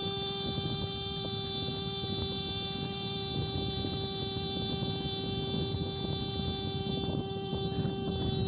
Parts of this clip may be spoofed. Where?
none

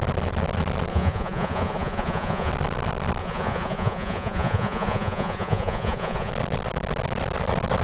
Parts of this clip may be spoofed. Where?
0.9-2.5 (vocoder, Vocos); 3.2-6.3